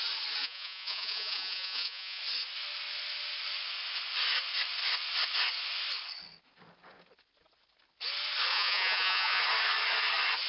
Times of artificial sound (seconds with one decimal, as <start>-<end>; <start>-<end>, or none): 0.4-2.2; 8.5-9.4